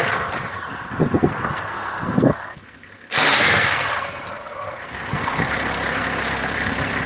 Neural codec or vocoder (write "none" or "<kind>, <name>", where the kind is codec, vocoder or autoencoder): codec, SNAC